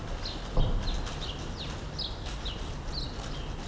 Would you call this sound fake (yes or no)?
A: no